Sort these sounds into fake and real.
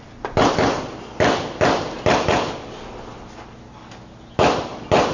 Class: real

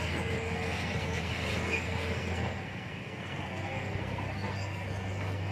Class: fake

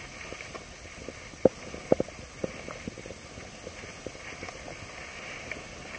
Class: real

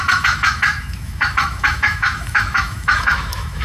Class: fake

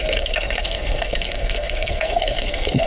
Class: fake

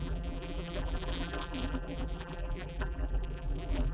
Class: fake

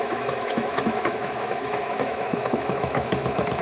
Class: fake